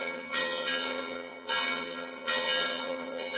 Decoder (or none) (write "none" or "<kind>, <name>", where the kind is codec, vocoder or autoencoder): vocoder, HiFi-GAN